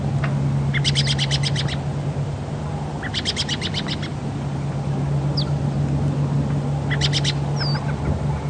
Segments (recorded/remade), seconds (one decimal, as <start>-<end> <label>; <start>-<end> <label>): 0.0-8.5 recorded